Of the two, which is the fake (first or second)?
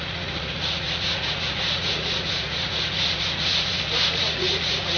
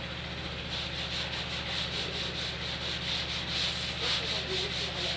first